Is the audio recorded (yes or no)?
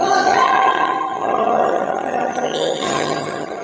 no